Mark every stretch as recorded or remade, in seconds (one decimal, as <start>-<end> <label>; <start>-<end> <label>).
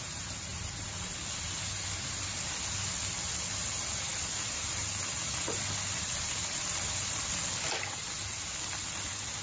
0.0-9.4 recorded